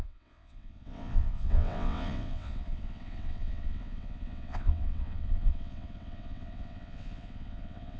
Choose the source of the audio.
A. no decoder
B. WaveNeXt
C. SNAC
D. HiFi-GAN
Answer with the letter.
B